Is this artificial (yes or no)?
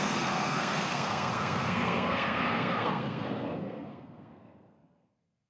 yes